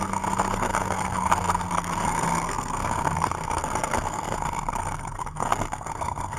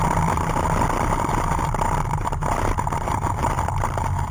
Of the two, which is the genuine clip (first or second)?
second